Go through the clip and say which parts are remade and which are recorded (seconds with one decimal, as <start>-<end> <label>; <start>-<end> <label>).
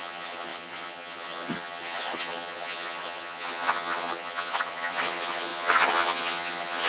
0.0-6.9 remade